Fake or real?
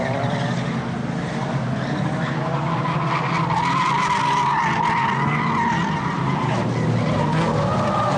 real